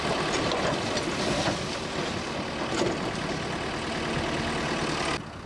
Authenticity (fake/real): real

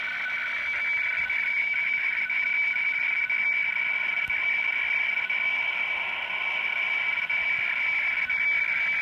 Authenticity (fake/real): real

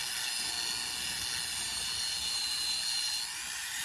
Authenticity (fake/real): real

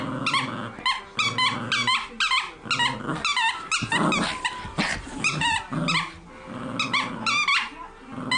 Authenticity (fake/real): real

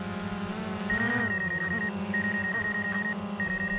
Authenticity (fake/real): real